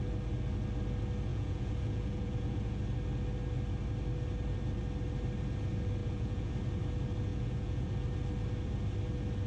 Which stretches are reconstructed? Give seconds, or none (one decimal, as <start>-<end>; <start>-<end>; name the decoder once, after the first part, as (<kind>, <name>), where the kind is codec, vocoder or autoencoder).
1.3-2.8 (vocoder, Vocos); 6.0-6.5; 7.3-7.9